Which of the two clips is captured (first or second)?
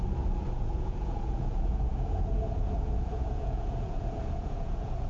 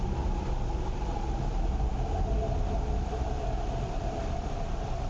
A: second